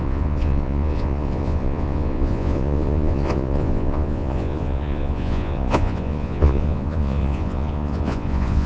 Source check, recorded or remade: remade